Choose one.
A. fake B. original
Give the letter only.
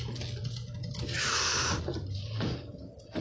B